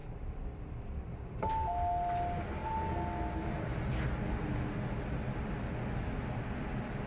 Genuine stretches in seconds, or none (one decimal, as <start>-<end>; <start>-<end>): 0.0-7.1